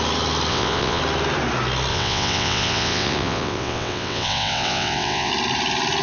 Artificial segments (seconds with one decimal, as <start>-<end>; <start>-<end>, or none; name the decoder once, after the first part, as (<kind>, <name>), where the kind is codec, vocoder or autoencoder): 0.5-1.0 (vocoder, WaveNeXt); 1.9-5.3